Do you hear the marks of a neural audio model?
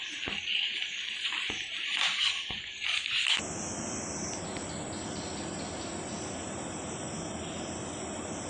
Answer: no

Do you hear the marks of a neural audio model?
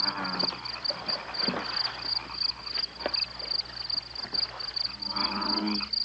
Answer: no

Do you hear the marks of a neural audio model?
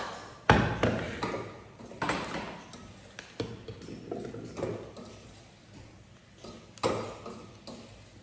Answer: no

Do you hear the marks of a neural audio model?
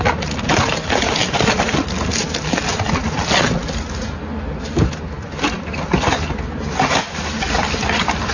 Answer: no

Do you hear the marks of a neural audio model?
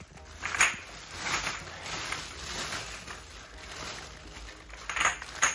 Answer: no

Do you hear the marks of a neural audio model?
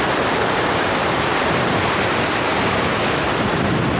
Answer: no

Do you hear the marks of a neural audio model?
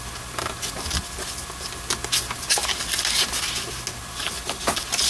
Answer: no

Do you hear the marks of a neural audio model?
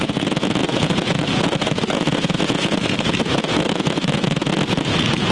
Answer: yes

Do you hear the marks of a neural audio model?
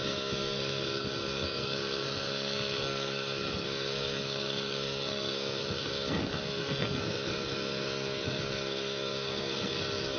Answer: yes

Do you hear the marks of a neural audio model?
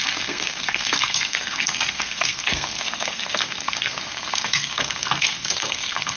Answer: yes